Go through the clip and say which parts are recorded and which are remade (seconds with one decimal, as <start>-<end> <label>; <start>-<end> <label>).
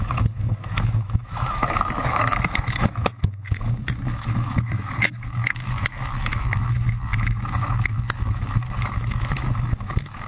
0.0-10.3 remade